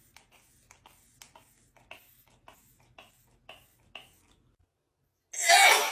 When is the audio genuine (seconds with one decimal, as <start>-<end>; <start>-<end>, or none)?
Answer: 0.0-5.9